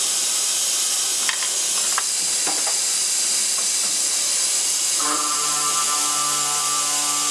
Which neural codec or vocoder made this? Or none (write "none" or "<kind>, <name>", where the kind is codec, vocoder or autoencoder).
none